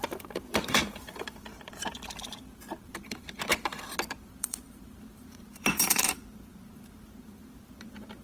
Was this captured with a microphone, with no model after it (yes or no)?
no